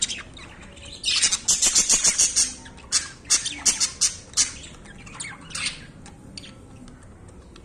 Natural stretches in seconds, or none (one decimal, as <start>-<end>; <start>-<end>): 0.0-7.6